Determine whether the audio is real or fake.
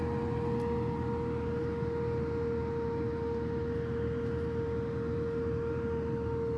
real